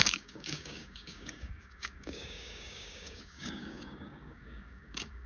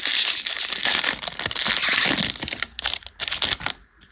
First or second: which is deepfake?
first